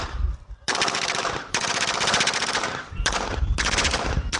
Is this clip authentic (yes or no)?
no